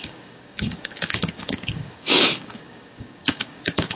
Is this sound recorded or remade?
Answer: remade